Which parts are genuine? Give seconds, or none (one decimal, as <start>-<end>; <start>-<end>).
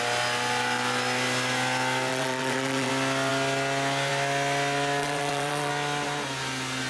0.0-2.1; 2.9-5.0; 5.7-6.9